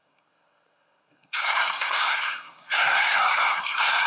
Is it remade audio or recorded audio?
remade